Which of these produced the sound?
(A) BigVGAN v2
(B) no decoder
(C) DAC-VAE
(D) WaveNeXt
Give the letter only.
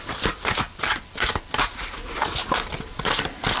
B